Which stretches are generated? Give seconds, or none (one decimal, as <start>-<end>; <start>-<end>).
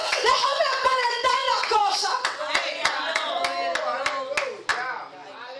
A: 0.0-3.4